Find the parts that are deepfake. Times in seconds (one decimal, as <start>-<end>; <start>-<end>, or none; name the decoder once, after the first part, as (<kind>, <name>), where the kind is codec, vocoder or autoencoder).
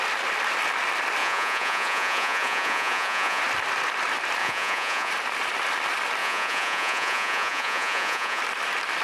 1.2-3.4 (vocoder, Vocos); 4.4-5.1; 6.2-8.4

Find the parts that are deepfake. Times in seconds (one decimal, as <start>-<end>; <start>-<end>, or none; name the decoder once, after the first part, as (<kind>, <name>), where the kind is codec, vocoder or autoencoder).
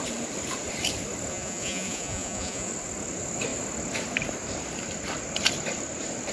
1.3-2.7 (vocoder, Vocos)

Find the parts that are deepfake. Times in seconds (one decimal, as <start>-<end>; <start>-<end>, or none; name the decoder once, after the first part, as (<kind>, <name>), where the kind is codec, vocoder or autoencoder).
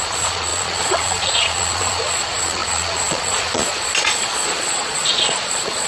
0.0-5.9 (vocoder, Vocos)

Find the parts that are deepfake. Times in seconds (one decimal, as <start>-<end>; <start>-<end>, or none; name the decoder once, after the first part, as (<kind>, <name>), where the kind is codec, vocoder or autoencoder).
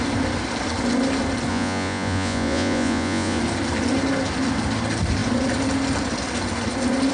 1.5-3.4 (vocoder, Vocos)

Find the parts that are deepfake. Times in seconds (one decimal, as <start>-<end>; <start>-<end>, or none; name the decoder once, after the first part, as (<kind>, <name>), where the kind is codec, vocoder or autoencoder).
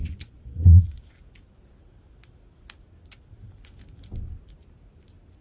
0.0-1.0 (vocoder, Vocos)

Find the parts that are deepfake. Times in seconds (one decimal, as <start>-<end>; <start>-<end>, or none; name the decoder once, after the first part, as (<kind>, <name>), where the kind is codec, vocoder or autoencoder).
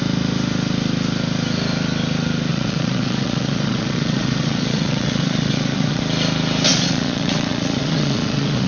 2.5-6.0 (vocoder, Vocos); 6.7-8.7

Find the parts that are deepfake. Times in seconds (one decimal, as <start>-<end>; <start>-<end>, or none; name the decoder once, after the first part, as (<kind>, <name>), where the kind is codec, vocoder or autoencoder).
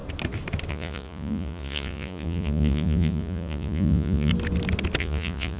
0.7-4.3 (vocoder, Vocos); 5.0-5.6